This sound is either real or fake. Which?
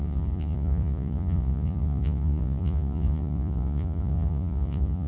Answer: fake